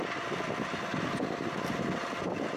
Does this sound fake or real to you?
real